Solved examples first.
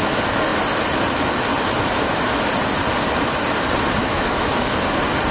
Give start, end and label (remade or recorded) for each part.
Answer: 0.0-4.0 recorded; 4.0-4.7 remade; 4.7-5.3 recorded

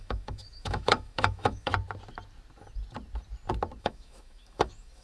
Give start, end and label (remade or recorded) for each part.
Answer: 0.0-1.7 remade; 1.7-3.8 recorded; 3.8-5.0 remade

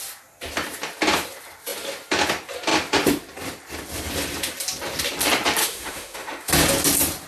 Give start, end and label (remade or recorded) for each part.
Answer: 0.0-5.6 recorded; 5.6-6.5 remade; 6.5-7.3 recorded

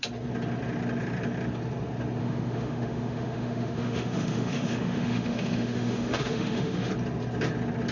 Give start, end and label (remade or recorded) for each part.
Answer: 0.0-2.2 recorded; 2.2-6.9 remade; 6.9-7.9 recorded

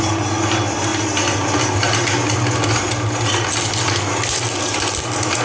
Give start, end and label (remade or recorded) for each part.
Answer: 0.0-5.4 recorded

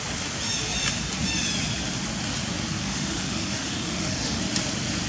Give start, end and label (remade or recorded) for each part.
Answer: 0.0-2.8 recorded; 2.8-4.4 remade; 4.4-5.1 recorded

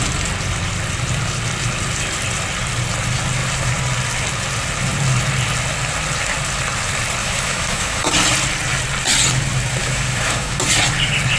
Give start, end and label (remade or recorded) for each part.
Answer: 0.0-7.2 recorded; 7.2-8.1 remade; 8.1-9.8 recorded; 9.8-10.6 remade; 10.6-11.4 recorded

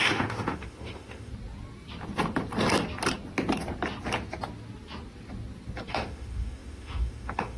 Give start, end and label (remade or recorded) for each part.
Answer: 0.0-1.3 remade; 1.3-5.9 recorded; 5.9-7.6 remade